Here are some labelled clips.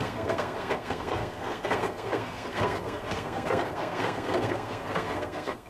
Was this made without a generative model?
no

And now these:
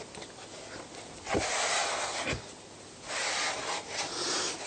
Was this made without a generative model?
yes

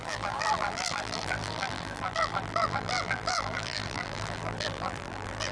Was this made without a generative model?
no